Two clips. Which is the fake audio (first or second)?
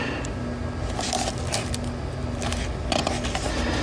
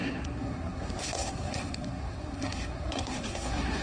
second